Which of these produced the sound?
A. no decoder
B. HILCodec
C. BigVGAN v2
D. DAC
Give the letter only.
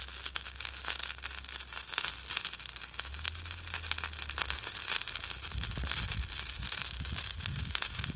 A